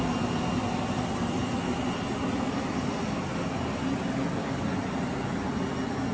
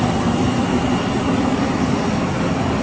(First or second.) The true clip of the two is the first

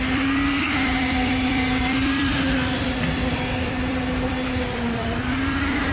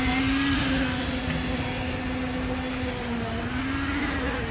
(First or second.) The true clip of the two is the second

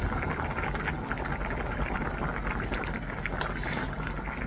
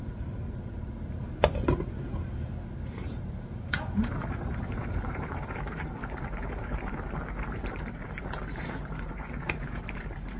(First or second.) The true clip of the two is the first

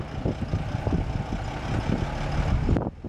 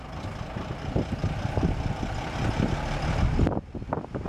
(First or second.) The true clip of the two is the first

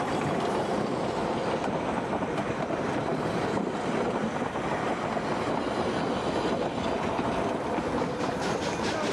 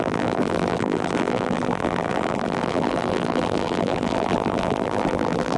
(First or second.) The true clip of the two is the first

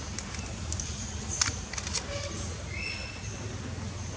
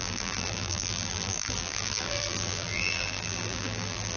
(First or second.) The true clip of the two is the first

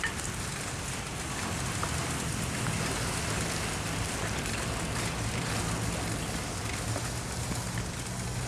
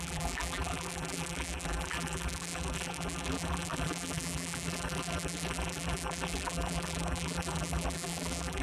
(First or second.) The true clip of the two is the first